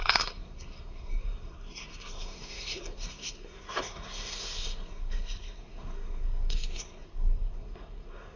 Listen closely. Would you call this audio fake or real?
fake